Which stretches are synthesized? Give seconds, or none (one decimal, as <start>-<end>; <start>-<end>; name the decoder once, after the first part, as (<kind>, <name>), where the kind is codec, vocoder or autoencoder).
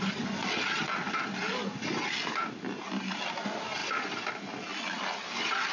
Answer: none